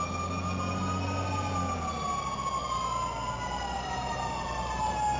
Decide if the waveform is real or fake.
real